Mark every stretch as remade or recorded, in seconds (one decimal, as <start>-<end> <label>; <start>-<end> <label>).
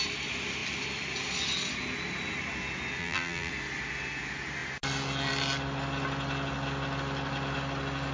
0.0-3.0 recorded; 3.0-3.5 remade; 3.5-8.1 recorded